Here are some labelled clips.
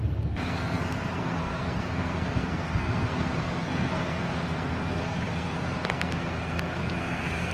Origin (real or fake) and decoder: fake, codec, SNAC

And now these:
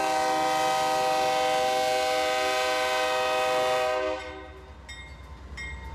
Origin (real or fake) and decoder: real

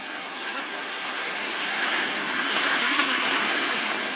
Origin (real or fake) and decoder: fake, codec, SNAC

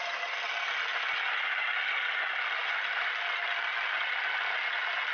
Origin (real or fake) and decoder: real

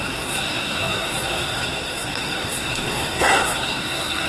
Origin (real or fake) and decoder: fake, codec, SNAC